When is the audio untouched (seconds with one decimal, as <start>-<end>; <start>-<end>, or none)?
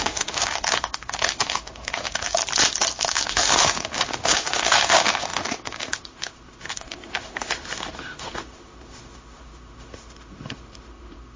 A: 2.4-3.0